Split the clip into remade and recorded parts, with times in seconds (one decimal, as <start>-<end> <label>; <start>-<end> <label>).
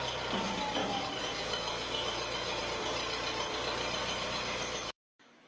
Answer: 0.0-0.8 recorded; 0.8-2.6 remade; 2.6-4.0 recorded; 4.0-5.5 remade